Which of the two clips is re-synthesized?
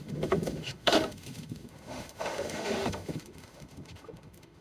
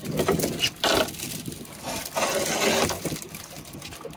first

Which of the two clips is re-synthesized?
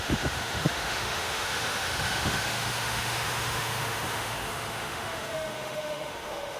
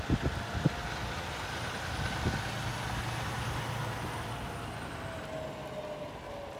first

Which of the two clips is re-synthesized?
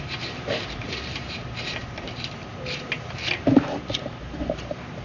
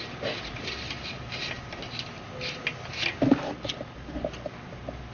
first